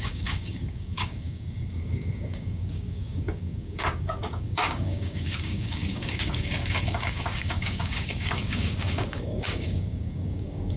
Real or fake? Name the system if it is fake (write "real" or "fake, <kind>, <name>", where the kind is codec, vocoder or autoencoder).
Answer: fake, codec, DAC